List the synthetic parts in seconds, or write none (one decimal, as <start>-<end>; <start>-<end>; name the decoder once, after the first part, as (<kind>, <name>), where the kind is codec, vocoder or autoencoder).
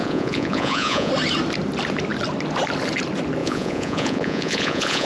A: 0.0-1.1 (vocoder, Vocos); 3.4-5.1